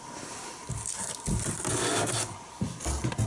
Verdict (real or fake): real